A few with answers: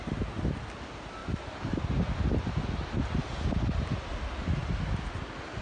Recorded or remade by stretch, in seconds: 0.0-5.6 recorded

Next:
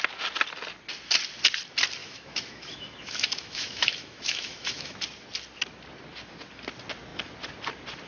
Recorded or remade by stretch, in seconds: 0.0-2.0 recorded; 2.0-5.0 remade; 5.0-8.1 recorded